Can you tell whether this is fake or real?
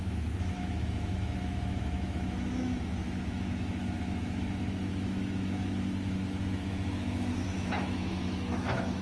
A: fake